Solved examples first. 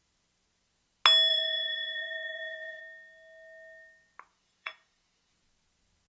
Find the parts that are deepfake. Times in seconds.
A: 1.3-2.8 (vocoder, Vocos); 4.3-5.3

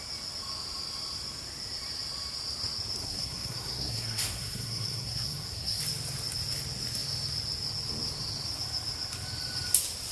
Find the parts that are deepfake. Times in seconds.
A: 3.0-5.8 (codec, SNAC)

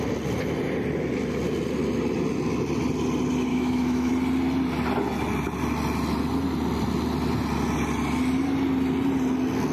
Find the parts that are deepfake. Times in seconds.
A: 3.5-4.1 (autoencoder, DAC-VAE)

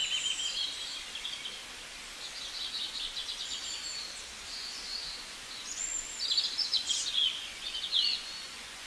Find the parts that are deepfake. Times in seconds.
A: 4.5-5.9 (vocoder, Vocos); 6.4-8.9

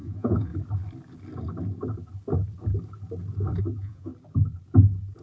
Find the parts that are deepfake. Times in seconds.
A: 0.0-0.5 (vocoder, Vocos); 3.6-4.1

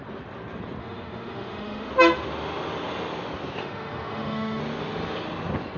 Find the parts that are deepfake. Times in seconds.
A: 0.8-1.9 (autoencoder, DAC-VAE); 3.6-4.6